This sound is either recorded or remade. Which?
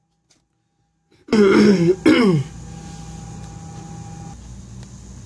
recorded